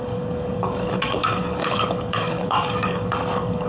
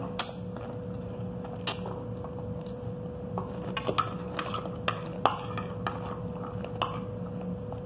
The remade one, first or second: first